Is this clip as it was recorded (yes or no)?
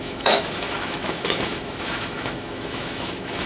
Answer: no